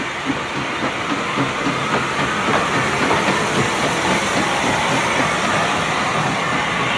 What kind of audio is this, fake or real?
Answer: real